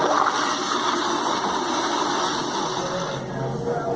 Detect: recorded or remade recorded